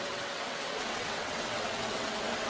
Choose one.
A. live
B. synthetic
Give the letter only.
B